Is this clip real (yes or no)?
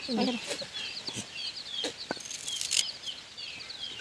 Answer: yes